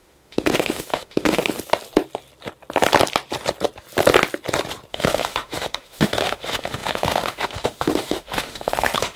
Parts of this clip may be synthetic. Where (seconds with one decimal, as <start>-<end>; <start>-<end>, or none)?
0.0-1.4; 4.9-9.2